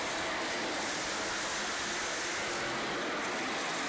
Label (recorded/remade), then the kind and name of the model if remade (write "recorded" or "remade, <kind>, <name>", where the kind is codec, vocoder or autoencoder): recorded